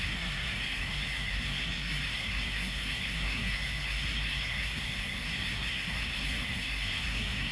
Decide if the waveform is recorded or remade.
remade